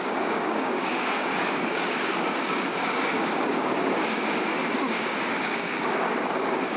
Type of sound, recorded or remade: remade